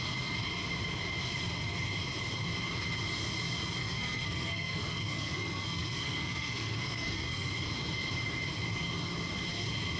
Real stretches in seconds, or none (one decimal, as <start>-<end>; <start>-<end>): 0.0-3.8; 7.5-10.0